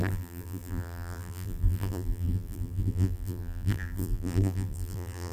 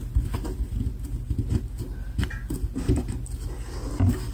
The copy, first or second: first